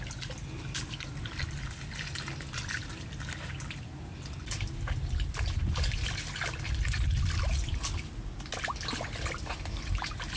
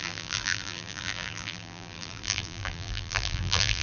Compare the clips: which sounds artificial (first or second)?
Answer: second